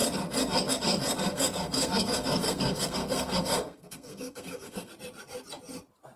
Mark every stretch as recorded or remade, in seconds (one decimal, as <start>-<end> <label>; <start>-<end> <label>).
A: 0.0-1.3 recorded; 1.3-4.9 remade; 4.9-6.2 recorded

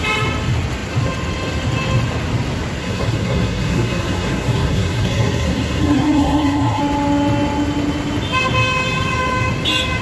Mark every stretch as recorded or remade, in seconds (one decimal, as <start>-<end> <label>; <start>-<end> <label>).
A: 0.0-2.8 recorded; 2.8-6.8 remade; 6.8-10.0 recorded